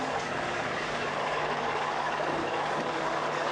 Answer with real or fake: fake